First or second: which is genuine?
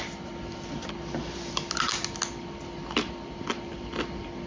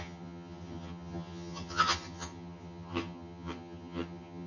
first